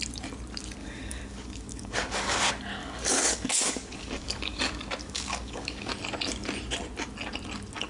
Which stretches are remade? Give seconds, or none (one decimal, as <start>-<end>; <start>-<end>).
0.8-2.4; 2.8-4.6; 5.0-5.9